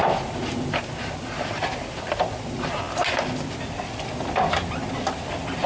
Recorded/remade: recorded